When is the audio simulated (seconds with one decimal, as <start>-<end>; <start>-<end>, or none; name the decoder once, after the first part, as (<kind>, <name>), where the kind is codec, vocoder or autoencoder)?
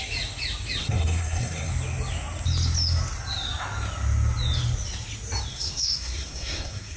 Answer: 0.8-1.7 (codec, SNAC); 5.5-7.0